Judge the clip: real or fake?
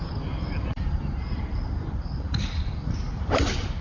fake